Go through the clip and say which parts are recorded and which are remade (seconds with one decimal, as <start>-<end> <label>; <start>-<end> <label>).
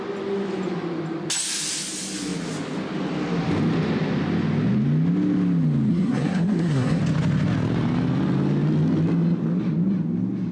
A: 0.0-5.9 recorded; 5.9-7.0 remade; 7.0-10.5 recorded